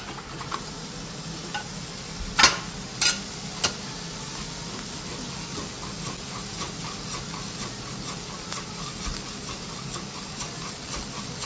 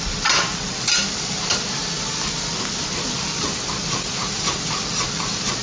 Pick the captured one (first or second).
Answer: first